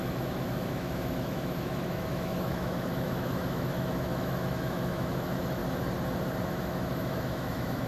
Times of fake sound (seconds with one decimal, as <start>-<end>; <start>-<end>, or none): 0.0-5.6; 6.4-7.9